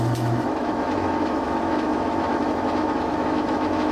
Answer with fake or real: fake